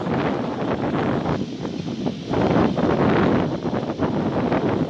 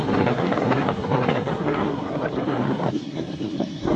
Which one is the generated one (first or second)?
second